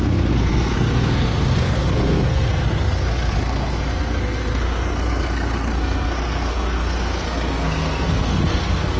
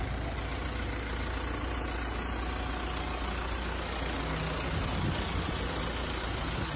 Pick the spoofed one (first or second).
first